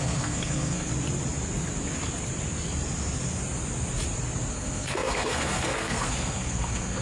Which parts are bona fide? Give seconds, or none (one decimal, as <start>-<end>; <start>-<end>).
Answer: 0.9-4.5